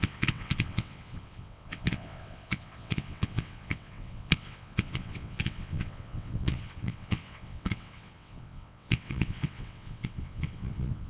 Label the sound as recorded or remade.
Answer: remade